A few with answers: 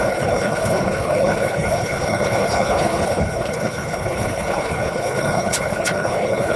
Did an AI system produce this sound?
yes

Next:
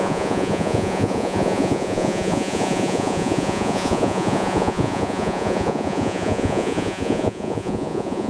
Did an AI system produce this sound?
yes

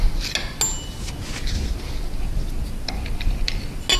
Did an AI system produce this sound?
no